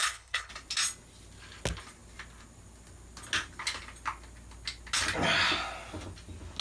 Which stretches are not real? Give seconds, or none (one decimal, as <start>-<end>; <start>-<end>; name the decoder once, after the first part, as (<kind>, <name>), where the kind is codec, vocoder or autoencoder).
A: 0.0-0.5 (codec, HILCodec)